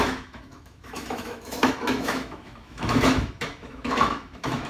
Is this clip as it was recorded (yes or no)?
no